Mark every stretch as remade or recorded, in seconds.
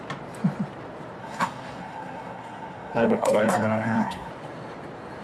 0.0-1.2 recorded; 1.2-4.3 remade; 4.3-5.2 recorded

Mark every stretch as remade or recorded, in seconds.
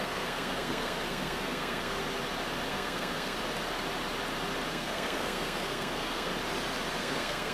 0.0-2.0 remade; 2.0-2.7 recorded; 2.7-3.4 remade; 3.4-4.7 recorded; 4.7-6.3 remade; 6.3-7.0 recorded; 7.0-7.5 remade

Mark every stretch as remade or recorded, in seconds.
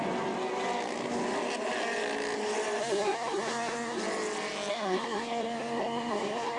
0.0-2.8 recorded; 2.8-4.0 remade; 4.0-4.7 recorded; 4.7-6.6 remade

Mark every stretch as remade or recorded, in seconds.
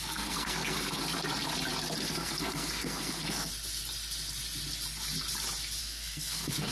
0.0-1.1 remade; 1.1-2.0 recorded; 2.0-3.5 remade; 3.5-5.8 recorded; 5.8-6.7 remade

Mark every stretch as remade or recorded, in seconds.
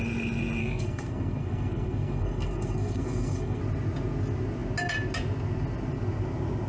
0.0-0.6 recorded; 0.6-3.6 remade; 3.6-6.7 recorded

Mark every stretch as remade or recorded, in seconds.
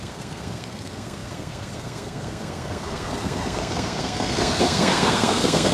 0.0-5.7 remade